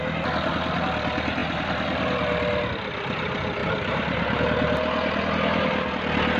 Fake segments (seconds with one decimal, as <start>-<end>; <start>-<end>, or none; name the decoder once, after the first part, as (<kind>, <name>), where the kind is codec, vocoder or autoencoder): 1.4-2.7 (vocoder, BigVGAN v2); 3.6-4.4

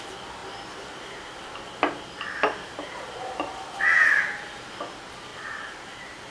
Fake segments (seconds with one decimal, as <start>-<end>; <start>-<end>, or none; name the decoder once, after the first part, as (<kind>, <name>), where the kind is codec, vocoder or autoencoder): 5.3-6.3 (vocoder, BigVGAN v2)

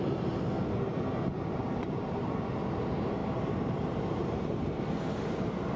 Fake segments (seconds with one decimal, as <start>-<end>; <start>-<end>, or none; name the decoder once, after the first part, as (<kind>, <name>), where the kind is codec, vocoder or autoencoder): 3.2-4.8 (vocoder, BigVGAN v2)

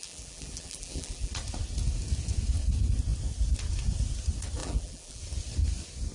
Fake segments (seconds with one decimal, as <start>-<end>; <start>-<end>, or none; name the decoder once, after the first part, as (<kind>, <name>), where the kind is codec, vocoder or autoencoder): 0.0-1.3 (vocoder, BigVGAN v2); 4.6-5.2

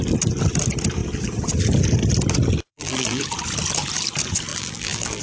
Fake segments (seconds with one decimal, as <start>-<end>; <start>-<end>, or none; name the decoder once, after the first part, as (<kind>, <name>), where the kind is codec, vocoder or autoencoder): 2.7-3.2 (vocoder, BigVGAN v2); 4.5-5.2

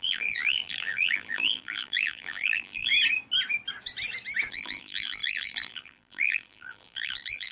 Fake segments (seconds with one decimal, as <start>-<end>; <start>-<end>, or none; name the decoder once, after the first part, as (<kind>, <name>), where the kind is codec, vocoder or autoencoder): 0.0-2.9 (vocoder, BigVGAN v2); 4.5-7.5

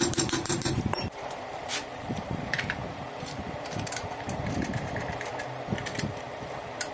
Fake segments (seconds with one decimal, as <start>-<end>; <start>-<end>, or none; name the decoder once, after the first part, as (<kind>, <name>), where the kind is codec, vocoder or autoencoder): 0.0-2.8 (vocoder, BigVGAN v2); 3.8-5.3; 6.0-6.9

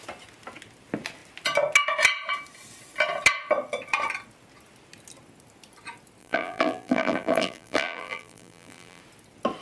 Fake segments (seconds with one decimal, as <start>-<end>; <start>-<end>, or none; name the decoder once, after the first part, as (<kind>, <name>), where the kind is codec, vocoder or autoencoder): 6.2-9.0 (vocoder, BigVGAN v2)